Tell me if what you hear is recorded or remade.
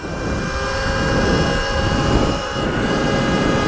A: recorded